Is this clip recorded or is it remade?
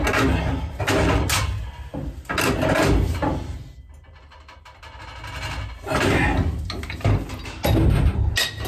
recorded